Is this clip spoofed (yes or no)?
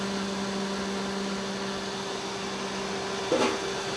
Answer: no